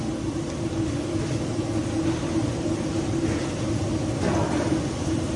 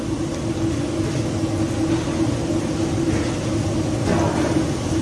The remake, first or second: first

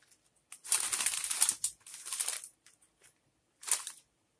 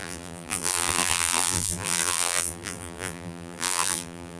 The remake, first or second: second